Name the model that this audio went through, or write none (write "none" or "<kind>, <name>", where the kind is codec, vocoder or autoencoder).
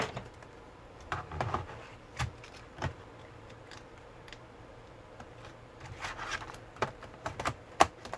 vocoder, BigVGAN v2